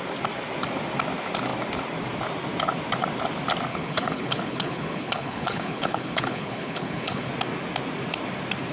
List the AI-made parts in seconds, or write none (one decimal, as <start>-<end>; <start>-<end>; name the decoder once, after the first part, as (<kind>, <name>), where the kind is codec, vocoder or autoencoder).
3.7-7.3 (codec, HILCodec)